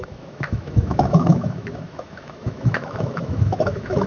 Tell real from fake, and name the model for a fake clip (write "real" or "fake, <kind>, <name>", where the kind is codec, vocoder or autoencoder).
fake, autoencoder, DAC-VAE